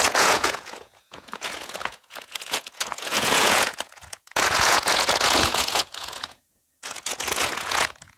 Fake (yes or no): yes